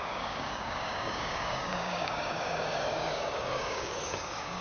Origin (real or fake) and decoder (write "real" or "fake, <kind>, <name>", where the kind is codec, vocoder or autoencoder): fake, codec, DAC